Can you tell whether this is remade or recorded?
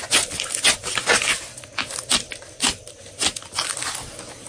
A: recorded